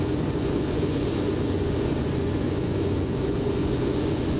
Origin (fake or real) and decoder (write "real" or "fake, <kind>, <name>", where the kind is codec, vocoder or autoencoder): fake, vocoder, Vocos